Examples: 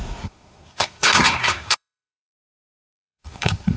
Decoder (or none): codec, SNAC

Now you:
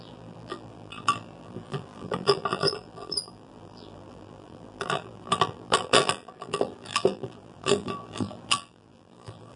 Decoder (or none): vocoder, BigVGAN v2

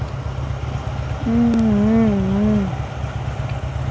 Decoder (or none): none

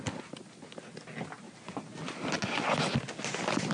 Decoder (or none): none